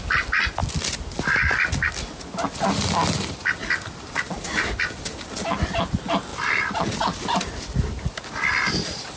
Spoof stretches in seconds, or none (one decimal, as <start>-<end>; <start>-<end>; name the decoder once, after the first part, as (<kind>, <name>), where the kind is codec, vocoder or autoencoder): 0.6-1.9 (vocoder, BigVGAN v2); 3.6-4.1; 6.3-9.2